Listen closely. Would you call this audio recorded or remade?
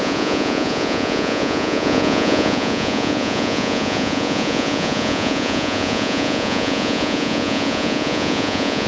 remade